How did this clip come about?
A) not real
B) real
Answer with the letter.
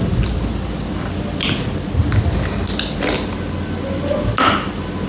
B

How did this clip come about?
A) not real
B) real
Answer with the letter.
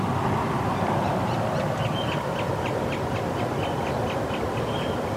B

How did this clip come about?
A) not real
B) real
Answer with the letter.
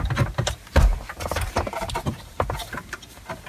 A